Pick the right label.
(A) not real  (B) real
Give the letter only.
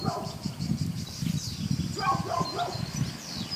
B